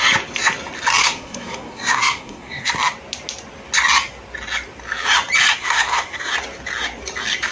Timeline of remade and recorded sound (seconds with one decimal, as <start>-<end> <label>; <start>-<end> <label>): 0.0-1.0 recorded; 1.0-2.7 remade; 2.7-5.5 recorded; 5.5-6.3 remade; 6.3-7.5 recorded